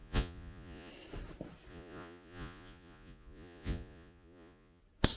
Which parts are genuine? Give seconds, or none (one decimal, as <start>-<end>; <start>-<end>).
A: 0.9-1.7; 4.8-5.2